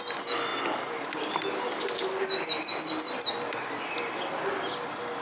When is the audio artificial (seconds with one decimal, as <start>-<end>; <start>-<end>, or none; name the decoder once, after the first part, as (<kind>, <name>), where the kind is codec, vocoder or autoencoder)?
0.5-1.1 (vocoder, BigVGAN v2)